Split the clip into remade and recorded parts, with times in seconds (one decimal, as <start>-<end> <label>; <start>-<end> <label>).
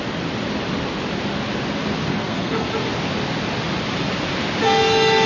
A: 0.0-2.1 recorded; 2.1-2.7 remade; 2.7-5.3 recorded